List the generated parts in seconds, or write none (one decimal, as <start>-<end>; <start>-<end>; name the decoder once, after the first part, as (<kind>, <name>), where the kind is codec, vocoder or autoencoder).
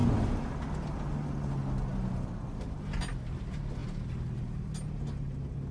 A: none